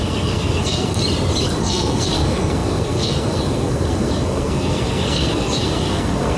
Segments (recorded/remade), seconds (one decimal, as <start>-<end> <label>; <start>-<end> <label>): 0.0-1.0 remade; 1.0-1.6 recorded; 1.6-6.4 remade